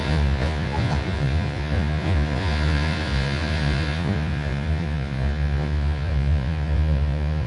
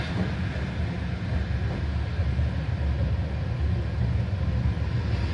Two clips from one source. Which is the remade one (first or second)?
first